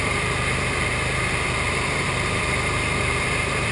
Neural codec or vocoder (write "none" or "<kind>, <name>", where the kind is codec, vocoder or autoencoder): vocoder, BigVGAN v2